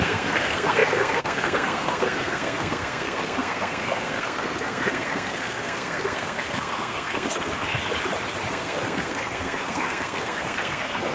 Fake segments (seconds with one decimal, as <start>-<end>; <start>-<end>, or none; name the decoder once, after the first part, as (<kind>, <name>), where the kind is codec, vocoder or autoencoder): 0.0-7.8 (codec, SNAC); 8.5-11.1

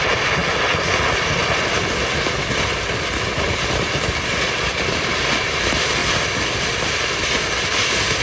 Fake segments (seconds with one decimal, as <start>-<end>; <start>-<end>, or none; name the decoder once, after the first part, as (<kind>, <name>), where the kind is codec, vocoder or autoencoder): none

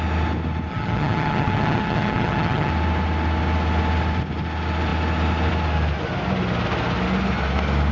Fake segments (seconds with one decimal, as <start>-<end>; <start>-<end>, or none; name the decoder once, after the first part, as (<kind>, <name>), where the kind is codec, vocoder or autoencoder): 0.7-2.7 (vocoder, HiFi-GAN)

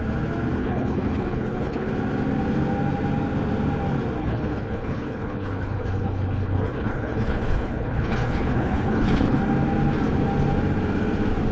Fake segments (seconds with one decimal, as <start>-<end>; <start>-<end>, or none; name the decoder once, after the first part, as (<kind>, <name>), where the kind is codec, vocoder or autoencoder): 0.6-1.9 (codec, HILCodec); 4.2-9.4